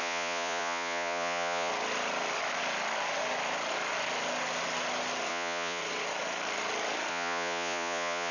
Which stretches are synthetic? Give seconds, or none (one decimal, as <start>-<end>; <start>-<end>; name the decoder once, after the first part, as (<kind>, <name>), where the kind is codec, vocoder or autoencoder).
0.0-1.7 (vocoder, Vocos); 5.3-5.8; 7.1-8.3